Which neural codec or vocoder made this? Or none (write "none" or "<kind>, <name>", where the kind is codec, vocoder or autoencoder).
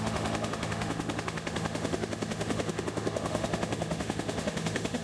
autoencoder, DAC-VAE